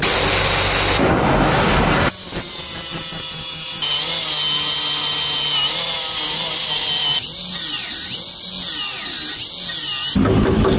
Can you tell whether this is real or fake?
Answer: real